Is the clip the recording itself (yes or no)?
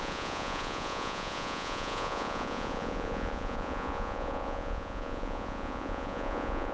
no